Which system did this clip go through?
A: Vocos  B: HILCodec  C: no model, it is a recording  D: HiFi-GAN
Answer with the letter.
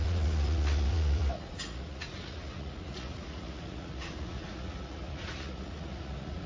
A